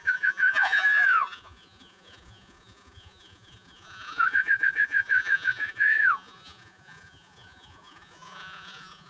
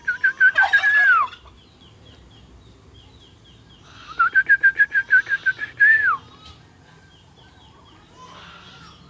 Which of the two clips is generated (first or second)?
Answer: first